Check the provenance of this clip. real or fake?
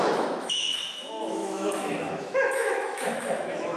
fake